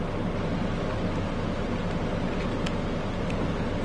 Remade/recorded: recorded